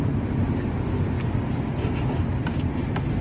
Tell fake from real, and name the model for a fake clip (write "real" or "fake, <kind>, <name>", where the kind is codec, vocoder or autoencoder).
real